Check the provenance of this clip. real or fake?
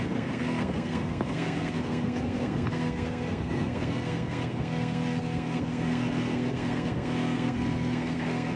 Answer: fake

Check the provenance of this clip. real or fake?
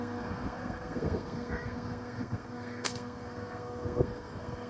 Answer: fake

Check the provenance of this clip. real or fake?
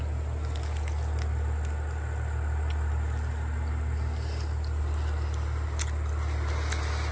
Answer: real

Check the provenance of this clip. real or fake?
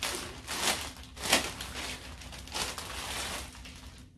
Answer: real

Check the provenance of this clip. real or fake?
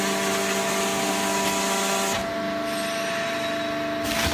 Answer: real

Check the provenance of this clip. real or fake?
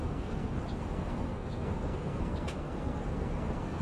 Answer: fake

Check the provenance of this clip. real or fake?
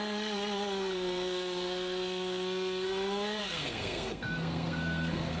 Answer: fake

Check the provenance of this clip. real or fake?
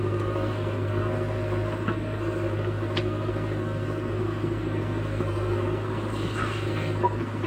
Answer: fake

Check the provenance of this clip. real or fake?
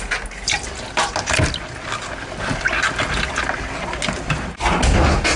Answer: real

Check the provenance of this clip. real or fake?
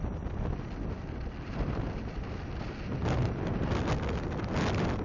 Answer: real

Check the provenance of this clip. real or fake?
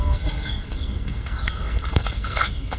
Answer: fake